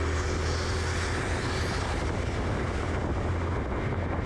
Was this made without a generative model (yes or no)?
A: yes